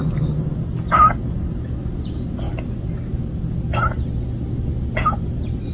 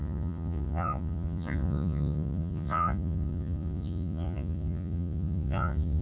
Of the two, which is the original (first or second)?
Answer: first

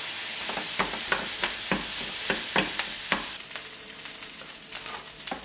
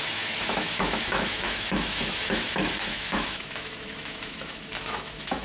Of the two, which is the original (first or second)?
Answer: first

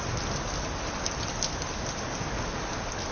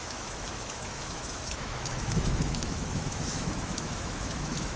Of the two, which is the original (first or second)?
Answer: first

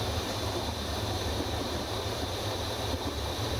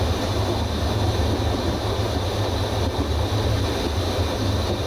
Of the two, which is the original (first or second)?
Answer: second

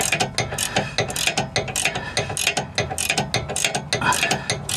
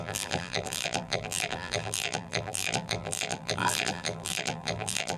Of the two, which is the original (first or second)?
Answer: first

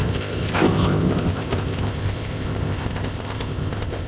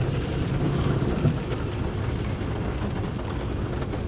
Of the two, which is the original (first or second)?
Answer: second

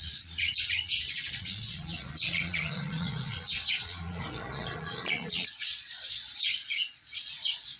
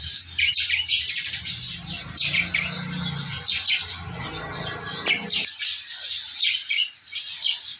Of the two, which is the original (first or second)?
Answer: second